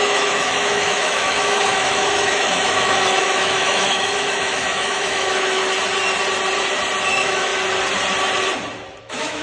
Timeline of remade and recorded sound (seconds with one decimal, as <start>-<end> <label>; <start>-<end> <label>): 0.0-5.6 remade; 5.6-7.1 recorded; 7.1-7.5 remade; 7.5-9.0 recorded; 9.0-9.4 remade